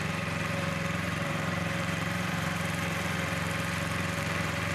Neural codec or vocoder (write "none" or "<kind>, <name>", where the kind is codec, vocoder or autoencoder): vocoder, BigVGAN v2